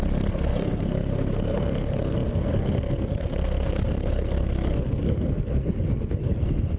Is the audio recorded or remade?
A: remade